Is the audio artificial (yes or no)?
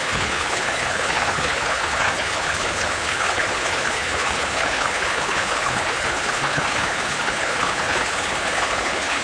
yes